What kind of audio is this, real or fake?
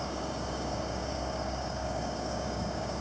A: fake